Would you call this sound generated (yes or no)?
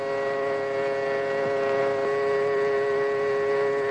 no